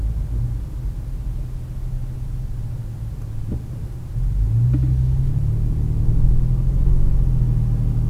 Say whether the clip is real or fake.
real